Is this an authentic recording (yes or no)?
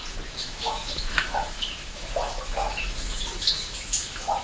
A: no